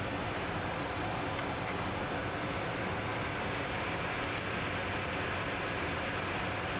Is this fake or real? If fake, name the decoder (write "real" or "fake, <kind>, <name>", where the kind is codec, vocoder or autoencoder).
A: real